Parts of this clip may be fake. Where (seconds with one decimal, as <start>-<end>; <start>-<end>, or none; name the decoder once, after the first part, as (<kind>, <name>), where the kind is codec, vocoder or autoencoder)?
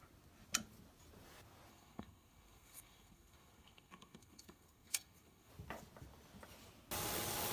1.7-5.5 (codec, SNAC)